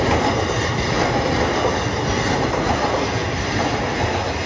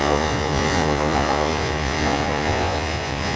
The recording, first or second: first